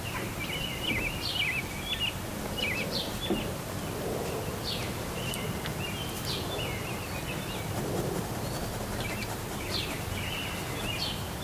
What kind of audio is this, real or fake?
real